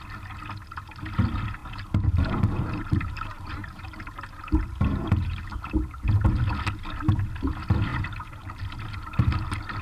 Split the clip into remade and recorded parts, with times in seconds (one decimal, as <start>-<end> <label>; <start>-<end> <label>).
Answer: 0.0-1.6 recorded; 1.6-5.6 remade; 5.6-7.9 recorded; 7.9-8.6 remade; 8.6-9.8 recorded